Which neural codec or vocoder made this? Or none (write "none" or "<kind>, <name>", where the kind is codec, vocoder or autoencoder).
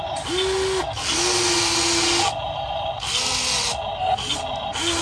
none